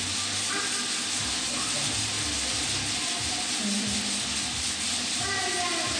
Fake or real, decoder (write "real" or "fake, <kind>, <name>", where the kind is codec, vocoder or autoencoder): real